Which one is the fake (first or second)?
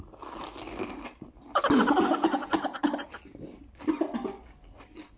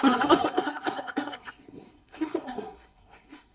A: second